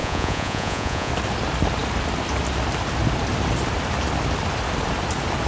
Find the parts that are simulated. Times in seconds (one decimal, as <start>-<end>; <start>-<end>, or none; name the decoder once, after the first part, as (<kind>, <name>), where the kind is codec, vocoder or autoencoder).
0.0-1.1 (vocoder, Vocos)